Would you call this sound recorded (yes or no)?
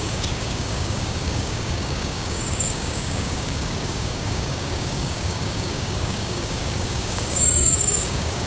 no